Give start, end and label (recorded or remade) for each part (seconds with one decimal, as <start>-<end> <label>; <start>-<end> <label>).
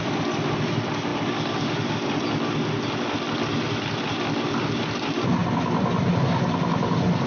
0.0-7.3 recorded